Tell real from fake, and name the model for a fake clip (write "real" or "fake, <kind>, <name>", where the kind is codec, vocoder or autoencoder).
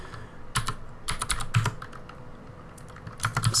real